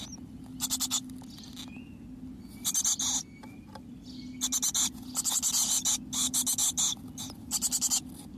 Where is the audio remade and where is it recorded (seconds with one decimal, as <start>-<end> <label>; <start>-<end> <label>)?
0.0-8.4 recorded